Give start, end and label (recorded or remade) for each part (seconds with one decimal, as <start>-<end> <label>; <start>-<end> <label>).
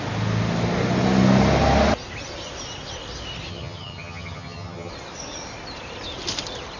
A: 0.0-3.5 recorded; 3.5-4.9 remade; 4.9-6.8 recorded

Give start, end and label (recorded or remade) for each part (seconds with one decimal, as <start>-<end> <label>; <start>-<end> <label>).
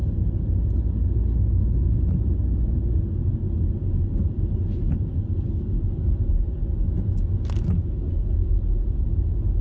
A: 0.0-9.6 recorded